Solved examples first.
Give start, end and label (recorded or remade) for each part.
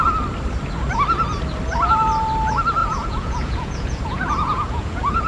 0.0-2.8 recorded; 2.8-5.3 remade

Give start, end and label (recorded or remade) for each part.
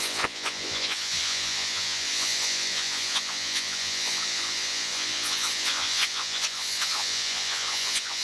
0.0-8.2 remade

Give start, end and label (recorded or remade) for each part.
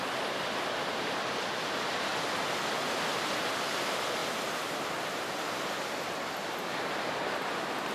0.0-7.9 recorded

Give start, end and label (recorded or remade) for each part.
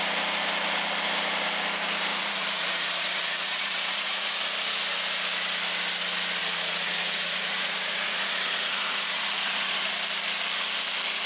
0.0-2.1 recorded; 2.1-4.3 remade; 4.3-6.4 recorded; 6.4-9.9 remade; 9.9-11.3 recorded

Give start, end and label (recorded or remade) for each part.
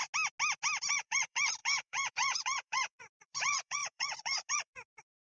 0.0-0.9 recorded; 0.9-5.2 remade